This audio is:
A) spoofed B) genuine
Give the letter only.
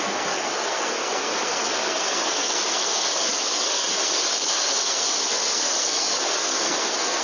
A